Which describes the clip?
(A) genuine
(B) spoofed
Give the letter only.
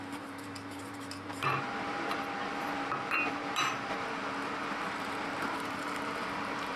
B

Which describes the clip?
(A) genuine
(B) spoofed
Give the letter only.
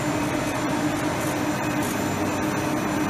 A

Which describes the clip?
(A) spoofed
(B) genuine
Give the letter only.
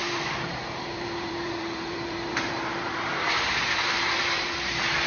A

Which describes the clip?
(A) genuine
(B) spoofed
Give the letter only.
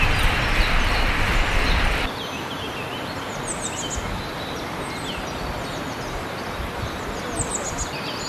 A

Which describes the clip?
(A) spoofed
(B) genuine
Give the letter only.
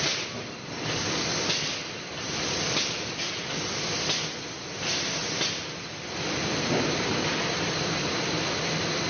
B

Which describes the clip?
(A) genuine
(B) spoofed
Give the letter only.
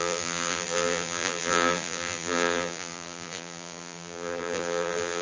B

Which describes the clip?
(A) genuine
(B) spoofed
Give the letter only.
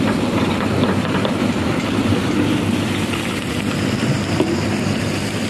B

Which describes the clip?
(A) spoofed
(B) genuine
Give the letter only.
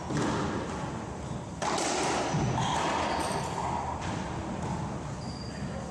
B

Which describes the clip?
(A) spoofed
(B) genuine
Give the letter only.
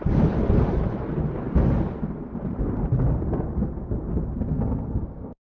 B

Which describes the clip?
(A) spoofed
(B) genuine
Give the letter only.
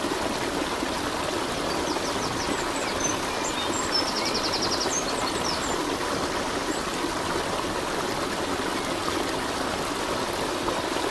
B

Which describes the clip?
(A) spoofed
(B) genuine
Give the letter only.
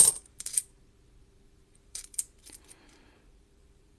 A